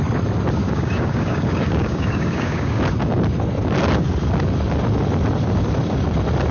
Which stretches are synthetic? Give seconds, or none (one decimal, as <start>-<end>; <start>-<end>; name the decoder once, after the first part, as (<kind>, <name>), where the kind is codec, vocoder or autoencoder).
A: 0.6-2.8 (codec, DAC)